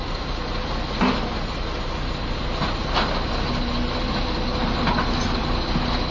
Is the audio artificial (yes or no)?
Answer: no